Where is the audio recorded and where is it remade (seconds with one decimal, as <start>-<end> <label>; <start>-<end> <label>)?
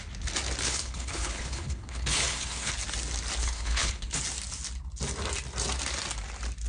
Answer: 0.0-0.6 recorded; 0.6-2.7 remade; 2.7-3.4 recorded; 3.4-4.2 remade; 4.2-6.7 recorded